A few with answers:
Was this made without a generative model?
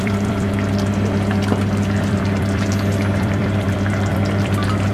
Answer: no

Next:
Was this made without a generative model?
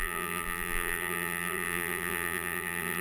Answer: no